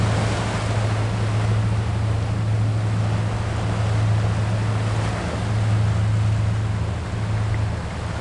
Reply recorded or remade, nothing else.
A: recorded